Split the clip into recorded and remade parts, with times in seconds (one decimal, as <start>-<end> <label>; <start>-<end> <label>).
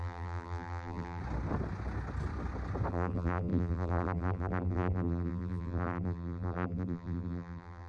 0.0-1.2 remade; 1.2-2.9 recorded; 2.9-7.9 remade